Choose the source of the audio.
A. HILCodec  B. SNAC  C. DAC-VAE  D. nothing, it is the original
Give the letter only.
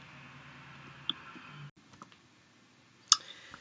D